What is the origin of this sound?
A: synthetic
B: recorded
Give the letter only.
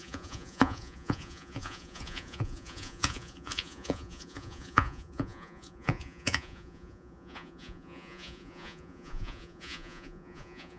A